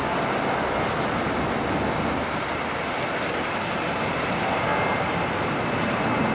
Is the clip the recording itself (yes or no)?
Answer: yes